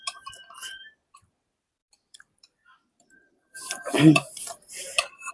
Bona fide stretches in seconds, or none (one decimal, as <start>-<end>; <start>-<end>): 0.0-1.8